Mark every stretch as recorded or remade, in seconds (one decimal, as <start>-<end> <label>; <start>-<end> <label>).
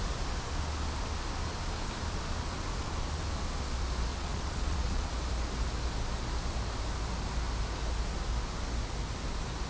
0.0-4.1 recorded; 4.1-5.1 remade; 5.1-9.7 recorded